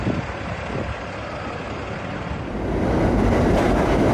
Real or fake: real